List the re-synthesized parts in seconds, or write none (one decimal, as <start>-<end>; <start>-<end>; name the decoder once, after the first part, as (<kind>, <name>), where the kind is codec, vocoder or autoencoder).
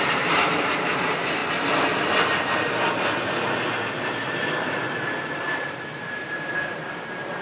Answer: 0.0-1.4 (vocoder, BigVGAN v2); 2.8-7.4